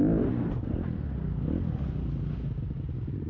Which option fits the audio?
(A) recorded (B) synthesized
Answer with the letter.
A